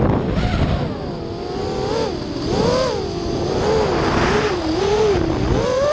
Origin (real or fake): real